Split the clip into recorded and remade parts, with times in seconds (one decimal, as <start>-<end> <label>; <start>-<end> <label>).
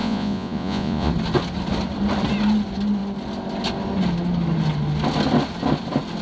0.0-1.1 remade; 1.1-6.2 recorded